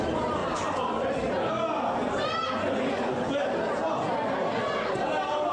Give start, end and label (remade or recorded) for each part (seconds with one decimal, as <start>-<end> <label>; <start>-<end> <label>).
0.0-5.5 recorded